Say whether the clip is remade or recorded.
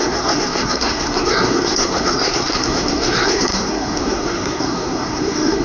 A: remade